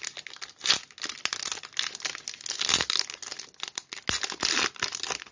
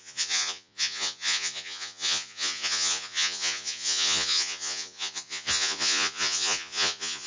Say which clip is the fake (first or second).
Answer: second